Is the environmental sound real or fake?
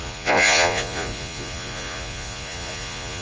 fake